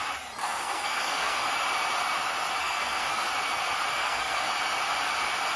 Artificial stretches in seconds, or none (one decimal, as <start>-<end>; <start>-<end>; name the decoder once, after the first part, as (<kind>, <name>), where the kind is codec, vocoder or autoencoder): 0.4-1.5 (codec, SNAC); 2.6-3.3; 4.0-4.5